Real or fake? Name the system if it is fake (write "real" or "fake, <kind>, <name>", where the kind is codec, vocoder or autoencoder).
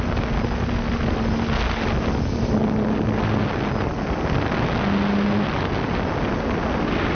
real